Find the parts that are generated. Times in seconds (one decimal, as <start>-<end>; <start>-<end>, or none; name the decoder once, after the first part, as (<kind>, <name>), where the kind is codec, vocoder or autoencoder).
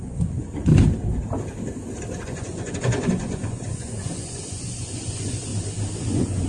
0.0-0.7 (vocoder, Vocos); 2.2-5.5; 6.0-6.5